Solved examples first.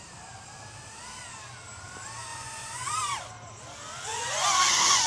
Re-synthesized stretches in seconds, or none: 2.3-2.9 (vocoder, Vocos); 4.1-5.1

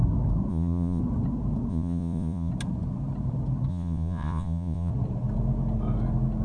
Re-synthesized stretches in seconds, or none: 0.5-1.0 (vocoder, Vocos); 1.7-2.5; 3.7-4.9

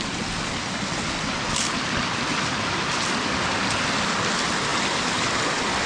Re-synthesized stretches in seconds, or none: none